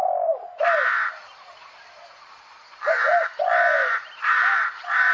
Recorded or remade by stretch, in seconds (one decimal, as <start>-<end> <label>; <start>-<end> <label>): 0.0-3.8 recorded; 3.8-5.1 remade